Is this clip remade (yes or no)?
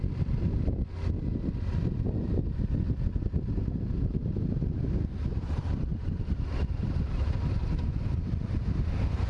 no